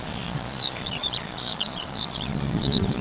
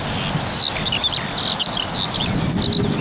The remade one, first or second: first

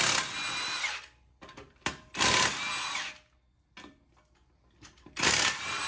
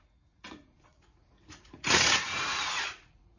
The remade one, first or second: second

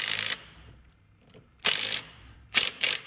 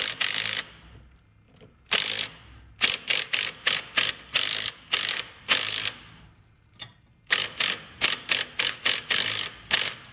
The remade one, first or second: first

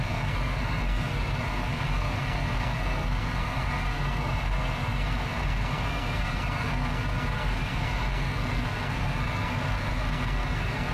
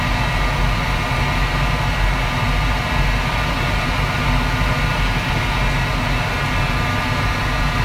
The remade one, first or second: first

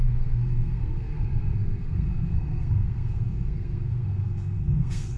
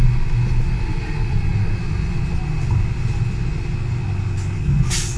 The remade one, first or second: first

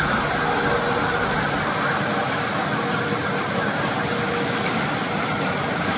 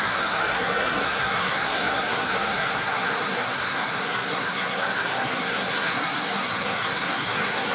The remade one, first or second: second